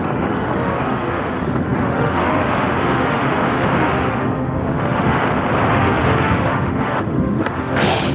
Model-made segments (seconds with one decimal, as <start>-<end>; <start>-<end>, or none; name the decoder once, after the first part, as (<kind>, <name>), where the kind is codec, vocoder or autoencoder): 0.0-5.2 (autoencoder, DAC-VAE); 5.7-8.1